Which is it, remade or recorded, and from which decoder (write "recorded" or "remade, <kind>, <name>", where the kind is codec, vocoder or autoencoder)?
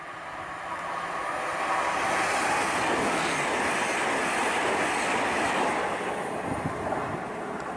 recorded